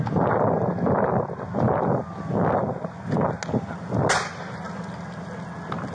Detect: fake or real real